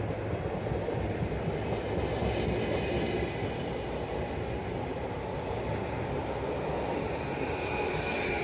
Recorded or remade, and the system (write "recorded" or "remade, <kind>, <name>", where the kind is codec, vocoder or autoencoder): recorded